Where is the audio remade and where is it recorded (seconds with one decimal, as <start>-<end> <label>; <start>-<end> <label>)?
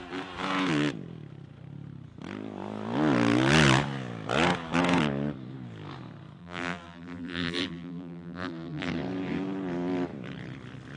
0.0-6.4 recorded; 6.4-8.9 remade; 8.9-11.0 recorded